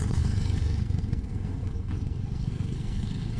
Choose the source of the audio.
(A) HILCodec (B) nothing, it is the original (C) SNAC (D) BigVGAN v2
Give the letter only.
C